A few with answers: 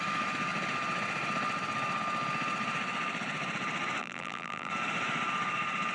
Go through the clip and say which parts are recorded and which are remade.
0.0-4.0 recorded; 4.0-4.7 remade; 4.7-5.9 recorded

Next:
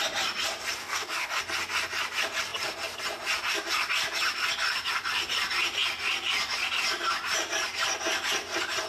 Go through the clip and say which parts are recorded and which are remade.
0.0-0.8 recorded; 0.8-1.4 remade; 1.4-8.9 recorded

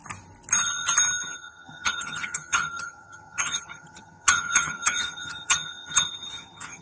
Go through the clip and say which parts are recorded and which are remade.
0.0-1.2 recorded; 1.2-6.8 remade

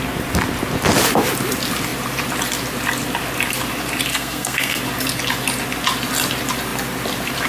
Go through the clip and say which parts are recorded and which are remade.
0.0-4.1 recorded; 4.1-4.8 remade; 4.8-7.5 recorded

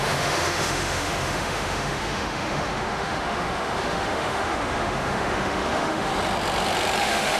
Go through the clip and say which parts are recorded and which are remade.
0.0-6.1 remade; 6.1-7.0 recorded; 7.0-7.4 remade

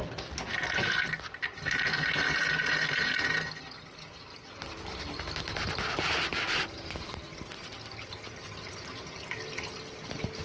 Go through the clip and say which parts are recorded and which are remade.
0.0-10.4 recorded